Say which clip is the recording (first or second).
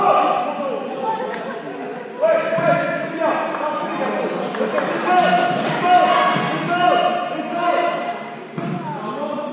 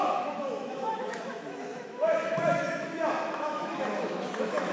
first